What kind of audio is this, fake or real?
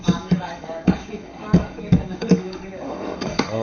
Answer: fake